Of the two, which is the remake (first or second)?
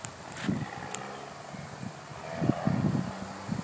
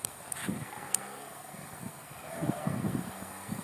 second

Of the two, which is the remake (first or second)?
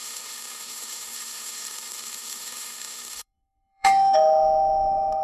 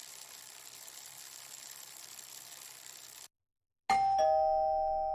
first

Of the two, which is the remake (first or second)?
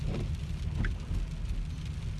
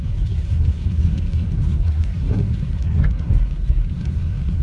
second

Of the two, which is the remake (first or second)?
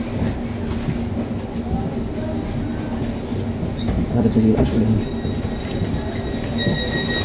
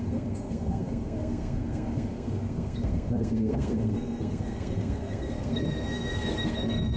second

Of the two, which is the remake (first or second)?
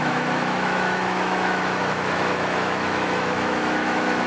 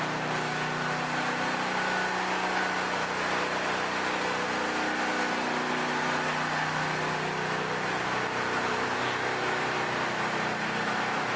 first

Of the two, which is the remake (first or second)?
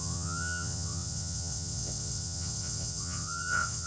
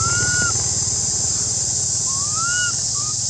first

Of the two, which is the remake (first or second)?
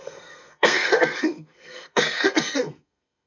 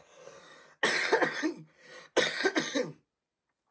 first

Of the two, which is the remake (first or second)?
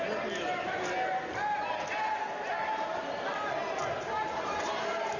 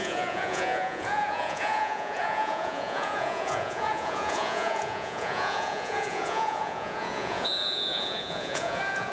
second